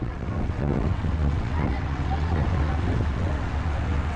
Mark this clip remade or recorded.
remade